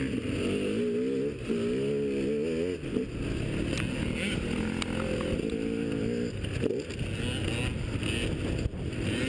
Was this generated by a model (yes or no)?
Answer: no